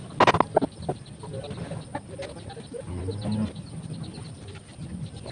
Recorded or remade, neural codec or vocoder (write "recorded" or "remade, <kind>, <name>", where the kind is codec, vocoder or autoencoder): recorded